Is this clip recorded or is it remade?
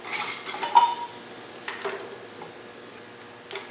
recorded